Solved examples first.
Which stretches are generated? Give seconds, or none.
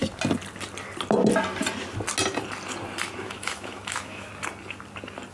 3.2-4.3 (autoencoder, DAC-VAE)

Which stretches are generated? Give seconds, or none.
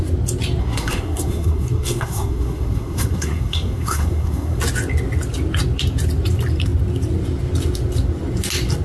0.6-4.6 (codec, SNAC)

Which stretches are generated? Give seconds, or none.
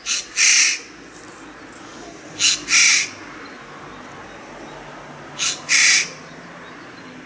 none